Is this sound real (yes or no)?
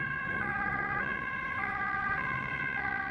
no